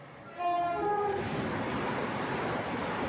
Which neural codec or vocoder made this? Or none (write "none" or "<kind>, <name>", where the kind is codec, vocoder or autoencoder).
none